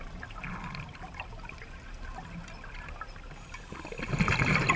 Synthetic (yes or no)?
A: no